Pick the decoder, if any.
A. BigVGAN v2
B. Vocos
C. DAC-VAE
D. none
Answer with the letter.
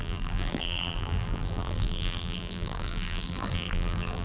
A